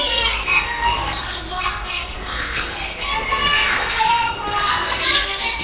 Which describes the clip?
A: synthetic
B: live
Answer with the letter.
A